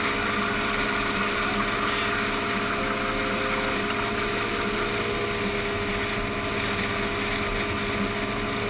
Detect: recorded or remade recorded